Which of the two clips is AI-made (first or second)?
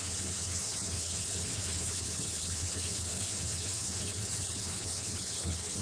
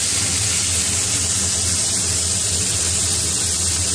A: first